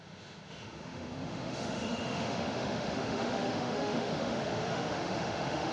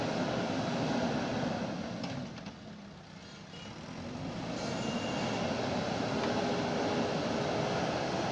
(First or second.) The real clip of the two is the second